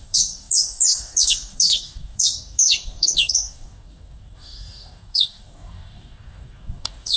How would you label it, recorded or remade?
remade